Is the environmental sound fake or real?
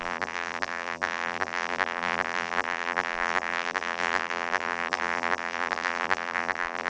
fake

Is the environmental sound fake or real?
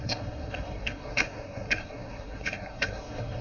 fake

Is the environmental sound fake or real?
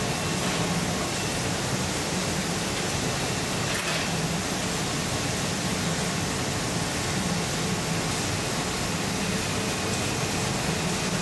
real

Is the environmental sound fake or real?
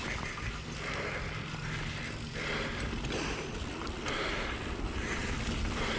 real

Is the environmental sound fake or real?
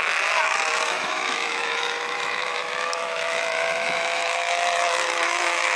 fake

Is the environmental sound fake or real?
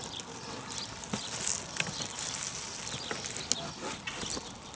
real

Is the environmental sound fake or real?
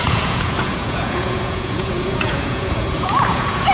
fake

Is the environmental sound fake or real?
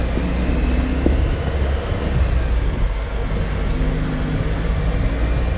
real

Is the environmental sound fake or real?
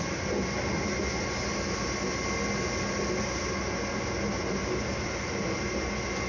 real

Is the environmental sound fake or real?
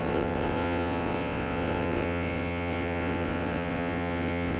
fake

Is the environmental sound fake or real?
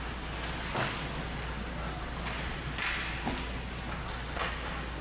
real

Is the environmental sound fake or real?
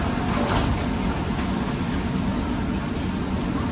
real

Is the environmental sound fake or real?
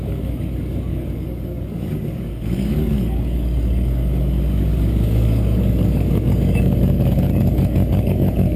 fake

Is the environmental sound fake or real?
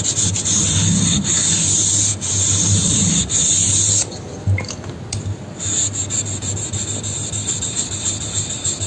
real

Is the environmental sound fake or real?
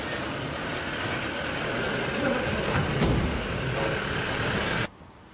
real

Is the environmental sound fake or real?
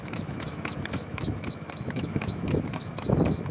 fake